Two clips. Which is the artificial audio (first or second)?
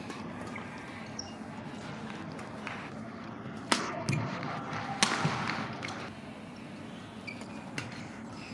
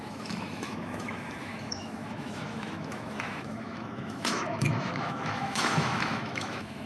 second